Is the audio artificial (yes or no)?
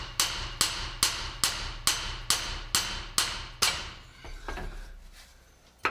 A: no